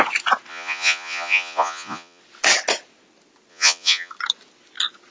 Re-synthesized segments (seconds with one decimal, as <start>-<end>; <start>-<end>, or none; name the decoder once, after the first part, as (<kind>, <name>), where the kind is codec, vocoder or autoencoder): 0.5-2.2 (vocoder, Vocos); 3.5-4.1